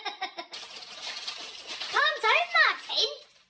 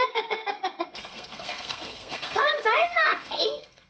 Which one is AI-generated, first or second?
second